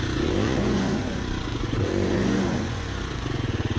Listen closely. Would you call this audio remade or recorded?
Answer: remade